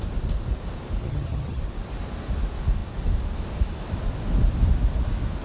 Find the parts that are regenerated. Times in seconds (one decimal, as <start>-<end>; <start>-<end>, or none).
1.0-1.6